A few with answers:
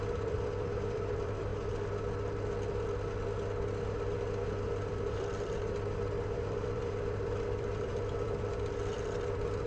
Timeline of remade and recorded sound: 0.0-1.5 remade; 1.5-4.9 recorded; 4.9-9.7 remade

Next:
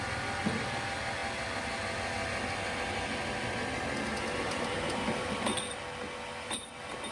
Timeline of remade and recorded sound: 0.0-4.4 recorded; 4.4-5.8 remade; 5.8-7.1 recorded

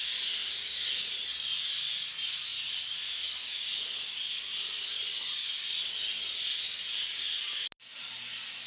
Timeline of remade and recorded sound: 0.0-8.7 recorded

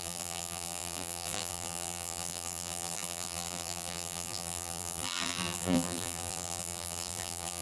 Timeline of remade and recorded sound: 0.0-7.6 remade

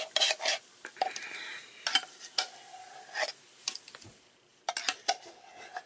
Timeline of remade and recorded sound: 0.0-5.9 recorded

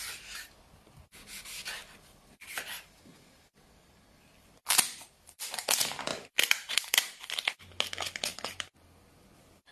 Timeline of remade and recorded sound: 0.0-1.8 recorded; 1.8-3.0 remade; 3.0-6.1 recorded; 6.1-7.2 remade; 7.2-8.3 recorded; 8.3-9.7 remade